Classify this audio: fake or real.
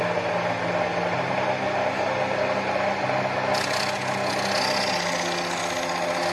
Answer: real